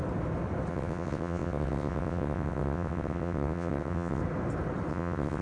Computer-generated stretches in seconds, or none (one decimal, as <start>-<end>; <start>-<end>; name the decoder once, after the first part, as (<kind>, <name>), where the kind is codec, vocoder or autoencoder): 0.7-4.2 (vocoder, WaveNeXt); 4.9-5.4